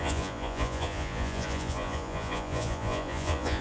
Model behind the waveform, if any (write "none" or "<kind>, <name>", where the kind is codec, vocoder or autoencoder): vocoder, Vocos